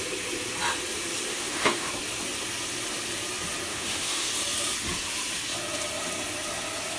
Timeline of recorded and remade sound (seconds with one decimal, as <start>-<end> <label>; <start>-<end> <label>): 0.0-1.3 recorded; 1.3-1.9 remade; 1.9-3.7 recorded; 3.7-4.3 remade; 4.3-7.0 recorded